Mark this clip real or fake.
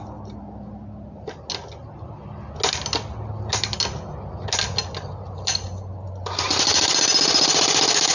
real